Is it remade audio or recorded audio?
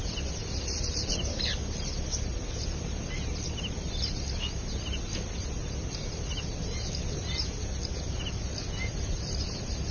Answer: recorded